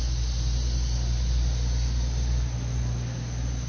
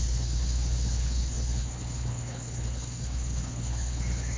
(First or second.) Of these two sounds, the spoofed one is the second